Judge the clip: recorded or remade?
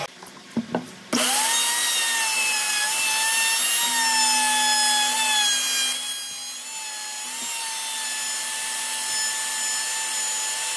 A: recorded